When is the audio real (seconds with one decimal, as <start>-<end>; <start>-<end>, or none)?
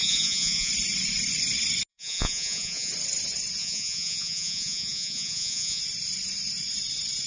0.7-1.9; 2.9-3.6; 5.8-7.3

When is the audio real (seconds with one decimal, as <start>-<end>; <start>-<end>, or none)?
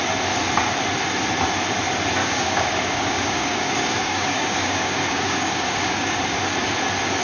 0.0-2.2; 6.2-7.2